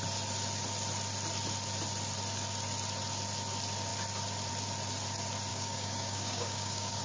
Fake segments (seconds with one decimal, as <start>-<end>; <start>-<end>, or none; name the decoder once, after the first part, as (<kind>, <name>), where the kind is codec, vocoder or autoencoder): 5.5-7.0 (codec, DAC)